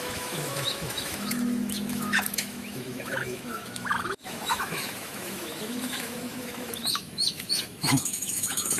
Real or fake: fake